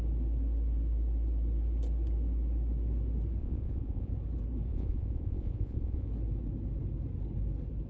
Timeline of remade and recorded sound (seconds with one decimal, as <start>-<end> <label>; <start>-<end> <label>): 0.0-3.4 recorded; 3.4-4.1 remade; 4.1-4.7 recorded; 4.7-6.1 remade; 6.1-7.9 recorded